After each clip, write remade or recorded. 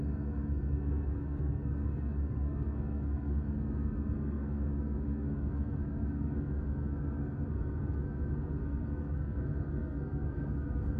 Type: remade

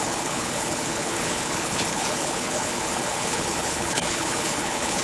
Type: remade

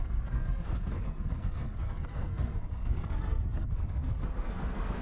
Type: remade